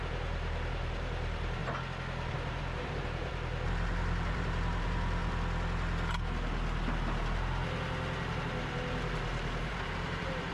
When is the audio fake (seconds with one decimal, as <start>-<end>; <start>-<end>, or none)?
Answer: 0.0-1.6; 2.3-5.2; 8.4-10.5